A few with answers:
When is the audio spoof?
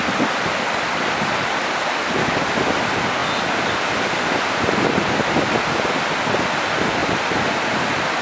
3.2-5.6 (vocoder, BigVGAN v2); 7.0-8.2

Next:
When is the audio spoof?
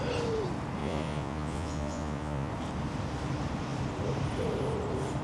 0.8-2.5 (vocoder, Vocos)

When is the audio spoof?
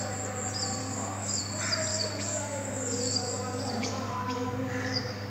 0.8-1.4 (codec, DAC); 1.9-5.3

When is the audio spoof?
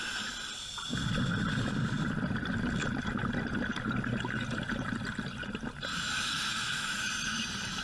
5.9-7.1 (autoencoder, DAC-VAE)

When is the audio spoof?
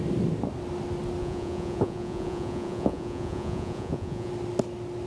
1.2-4.3 (vocoder, Vocos)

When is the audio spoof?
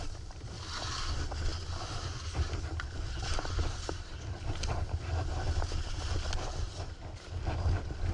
none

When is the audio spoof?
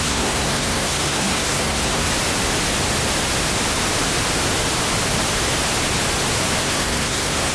0.0-2.1 (codec, SNAC); 6.6-7.5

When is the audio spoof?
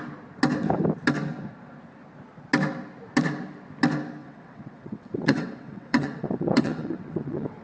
4.2-7.6 (vocoder, WaveNeXt)